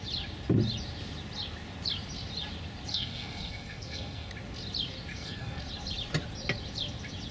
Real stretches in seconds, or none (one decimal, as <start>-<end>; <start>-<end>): 0.0-2.9; 4.3-5.1; 5.6-7.3